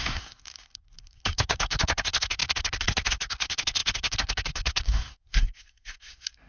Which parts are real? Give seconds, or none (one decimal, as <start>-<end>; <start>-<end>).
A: none